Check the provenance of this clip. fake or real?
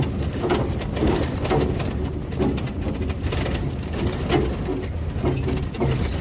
real